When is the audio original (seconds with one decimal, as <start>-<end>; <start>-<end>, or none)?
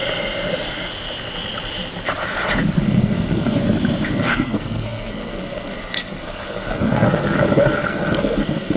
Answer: 0.0-2.8; 3.6-4.1